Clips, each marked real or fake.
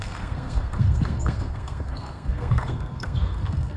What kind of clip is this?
fake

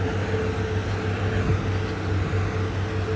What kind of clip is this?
real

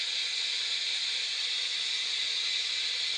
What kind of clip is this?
real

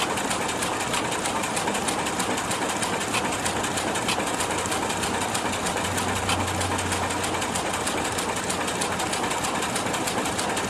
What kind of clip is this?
real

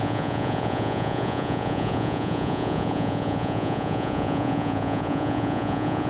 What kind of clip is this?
fake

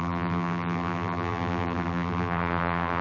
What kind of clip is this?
fake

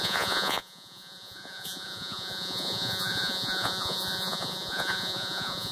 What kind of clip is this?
fake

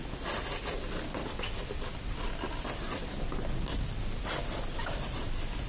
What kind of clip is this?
real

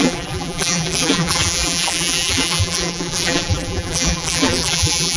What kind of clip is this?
fake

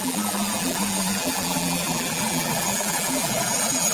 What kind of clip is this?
fake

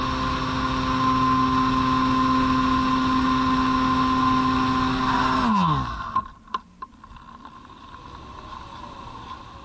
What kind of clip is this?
real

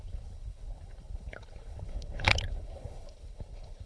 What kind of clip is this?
fake